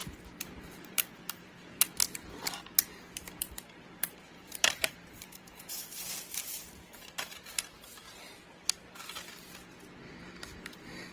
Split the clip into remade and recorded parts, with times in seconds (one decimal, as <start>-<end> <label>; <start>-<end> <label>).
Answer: 0.0-1.8 remade; 1.8-3.2 recorded; 3.2-7.4 remade; 7.4-11.1 recorded